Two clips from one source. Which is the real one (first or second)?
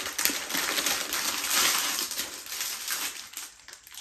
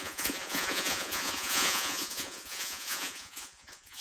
first